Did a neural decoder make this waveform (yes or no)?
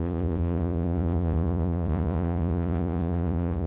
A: yes